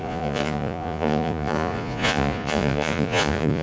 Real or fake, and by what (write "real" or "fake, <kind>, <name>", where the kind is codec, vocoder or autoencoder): fake, vocoder, Vocos